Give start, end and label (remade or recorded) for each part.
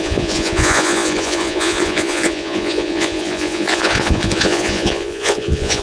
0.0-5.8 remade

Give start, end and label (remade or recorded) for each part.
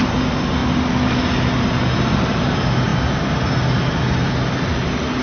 0.0-5.2 recorded